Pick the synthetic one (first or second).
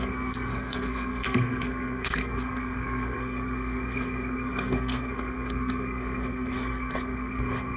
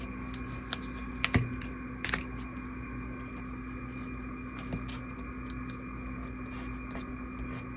first